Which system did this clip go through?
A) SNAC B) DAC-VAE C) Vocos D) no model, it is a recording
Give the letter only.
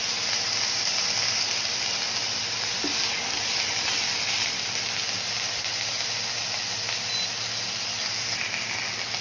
D